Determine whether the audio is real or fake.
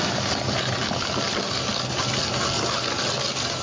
real